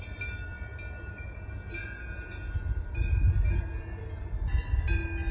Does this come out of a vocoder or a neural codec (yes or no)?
no